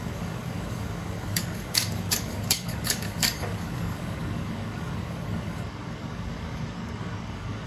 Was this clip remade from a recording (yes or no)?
yes